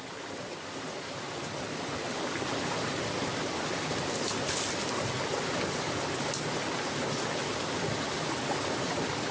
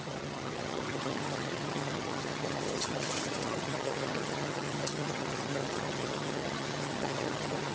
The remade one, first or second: second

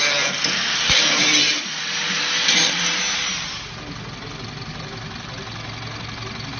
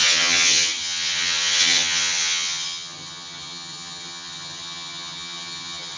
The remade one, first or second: second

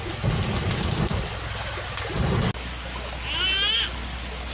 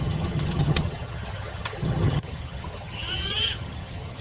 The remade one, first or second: second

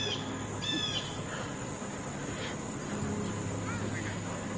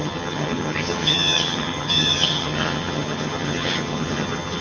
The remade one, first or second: second